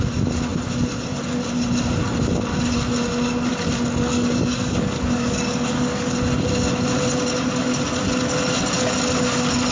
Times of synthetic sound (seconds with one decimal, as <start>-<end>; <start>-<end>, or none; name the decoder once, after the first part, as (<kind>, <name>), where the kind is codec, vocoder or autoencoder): 4.1-6.1 (codec, DAC)